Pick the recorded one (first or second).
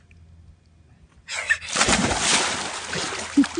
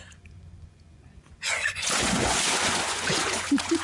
first